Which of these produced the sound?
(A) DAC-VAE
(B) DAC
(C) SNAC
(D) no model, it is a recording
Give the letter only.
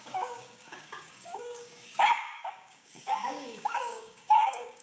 B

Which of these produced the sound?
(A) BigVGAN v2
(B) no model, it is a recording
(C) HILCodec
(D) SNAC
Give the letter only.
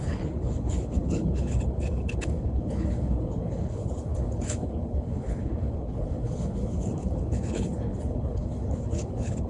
C